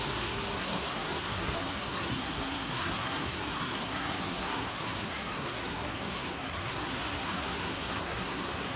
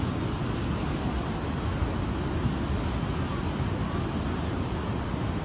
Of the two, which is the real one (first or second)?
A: second